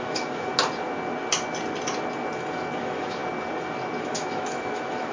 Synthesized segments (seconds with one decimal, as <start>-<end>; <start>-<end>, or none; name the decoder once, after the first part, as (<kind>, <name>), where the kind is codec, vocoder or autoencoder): 0.0-0.5 (autoencoder, DAC-VAE); 2.8-3.2; 4.0-5.1